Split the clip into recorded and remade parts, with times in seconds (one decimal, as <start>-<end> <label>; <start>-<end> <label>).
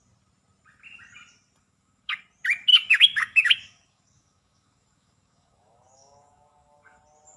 0.0-1.6 recorded; 1.6-2.2 remade; 2.2-2.7 recorded; 2.7-7.0 remade; 7.0-7.4 recorded